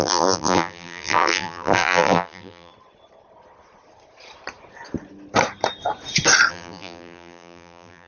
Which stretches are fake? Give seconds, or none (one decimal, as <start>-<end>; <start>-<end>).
0.0-2.7; 6.5-8.1